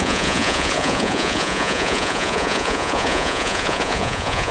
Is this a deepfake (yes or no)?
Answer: yes